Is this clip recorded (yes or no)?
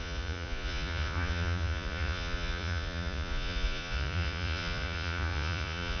no